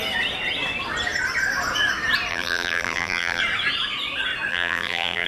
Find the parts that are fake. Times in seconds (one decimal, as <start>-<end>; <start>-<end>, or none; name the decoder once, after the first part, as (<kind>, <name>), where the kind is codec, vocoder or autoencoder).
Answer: 2.3-3.4 (vocoder, BigVGAN v2); 4.5-5.3